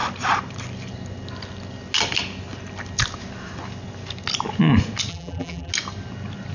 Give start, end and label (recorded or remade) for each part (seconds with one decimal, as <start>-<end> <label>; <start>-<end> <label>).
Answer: 0.0-5.1 recorded; 5.1-5.7 remade; 5.7-6.5 recorded